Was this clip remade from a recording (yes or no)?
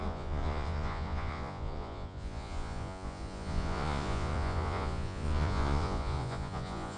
yes